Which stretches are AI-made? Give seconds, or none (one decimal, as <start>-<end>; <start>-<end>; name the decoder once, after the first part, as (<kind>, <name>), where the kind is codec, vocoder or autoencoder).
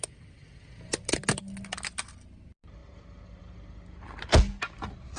none